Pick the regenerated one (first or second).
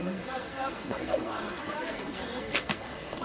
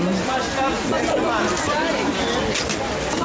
first